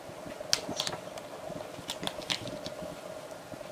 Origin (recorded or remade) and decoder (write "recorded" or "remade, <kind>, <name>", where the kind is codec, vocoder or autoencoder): recorded